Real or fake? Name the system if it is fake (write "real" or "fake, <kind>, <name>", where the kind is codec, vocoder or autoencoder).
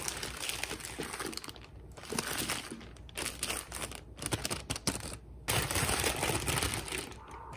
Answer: real